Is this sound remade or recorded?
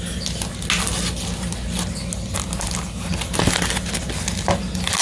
recorded